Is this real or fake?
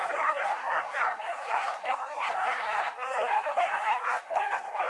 fake